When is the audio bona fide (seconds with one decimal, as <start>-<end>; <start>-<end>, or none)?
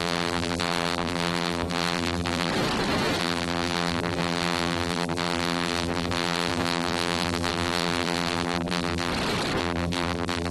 2.5-3.2; 9.1-9.6